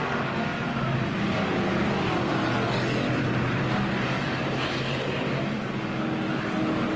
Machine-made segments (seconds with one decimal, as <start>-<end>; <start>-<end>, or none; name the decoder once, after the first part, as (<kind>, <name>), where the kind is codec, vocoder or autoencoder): 0.5-2.4 (vocoder, BigVGAN v2); 4.2-5.8